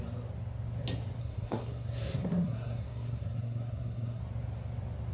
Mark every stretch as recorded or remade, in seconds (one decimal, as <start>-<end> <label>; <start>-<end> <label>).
0.0-1.2 recorded; 1.2-4.2 remade; 4.2-5.1 recorded